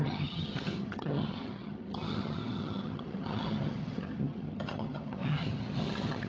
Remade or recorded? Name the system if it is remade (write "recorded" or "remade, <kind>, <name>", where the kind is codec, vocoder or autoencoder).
remade, vocoder, HiFi-GAN